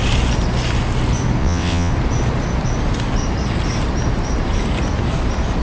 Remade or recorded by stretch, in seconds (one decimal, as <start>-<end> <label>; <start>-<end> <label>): 0.0-1.4 recorded; 1.4-1.9 remade; 1.9-5.6 recorded